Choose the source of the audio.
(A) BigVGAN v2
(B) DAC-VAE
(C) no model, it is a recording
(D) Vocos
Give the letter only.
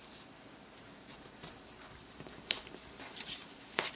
A